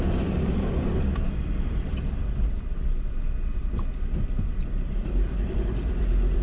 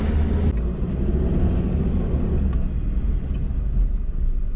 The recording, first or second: second